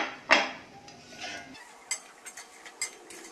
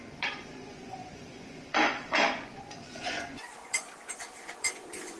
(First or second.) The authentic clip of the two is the first